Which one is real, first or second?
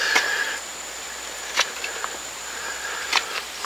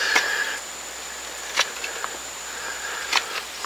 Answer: second